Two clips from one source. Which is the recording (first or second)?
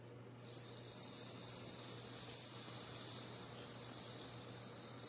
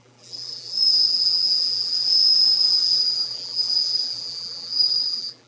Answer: first